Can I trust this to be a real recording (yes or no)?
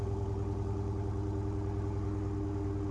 yes